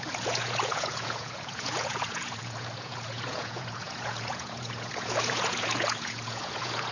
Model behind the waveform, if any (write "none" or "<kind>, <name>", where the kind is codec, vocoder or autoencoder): vocoder, Vocos